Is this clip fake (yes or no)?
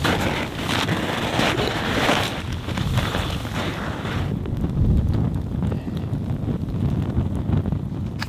no